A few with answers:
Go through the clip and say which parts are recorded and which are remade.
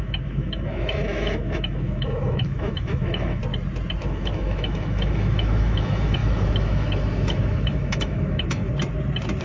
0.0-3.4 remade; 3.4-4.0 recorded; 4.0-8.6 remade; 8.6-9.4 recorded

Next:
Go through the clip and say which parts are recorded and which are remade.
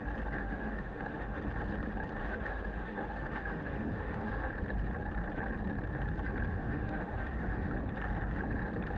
0.0-0.4 recorded; 0.4-1.4 remade; 1.4-2.2 recorded; 2.2-4.5 remade; 4.5-6.5 recorded; 6.5-7.7 remade; 7.7-9.0 recorded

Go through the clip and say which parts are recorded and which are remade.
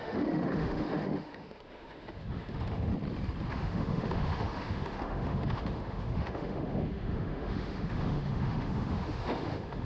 0.0-2.9 remade; 2.9-3.5 recorded; 3.5-9.8 remade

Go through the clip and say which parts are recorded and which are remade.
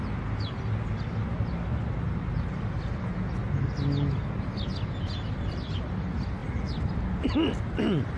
0.0-8.2 recorded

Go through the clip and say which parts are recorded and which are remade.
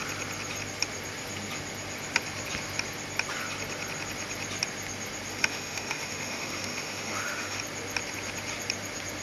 0.0-5.3 recorded; 5.3-7.6 remade; 7.6-9.2 recorded